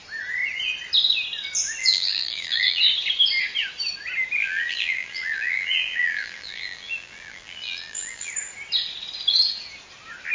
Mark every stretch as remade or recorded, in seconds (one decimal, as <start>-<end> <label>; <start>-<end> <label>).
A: 0.0-1.8 recorded; 1.8-2.8 remade; 2.8-4.4 recorded; 4.4-8.3 remade; 8.3-10.3 recorded